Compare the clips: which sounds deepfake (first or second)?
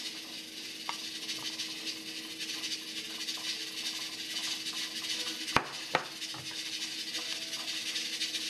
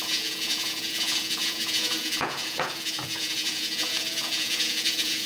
second